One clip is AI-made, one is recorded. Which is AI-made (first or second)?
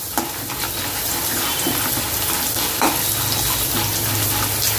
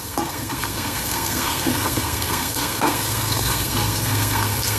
second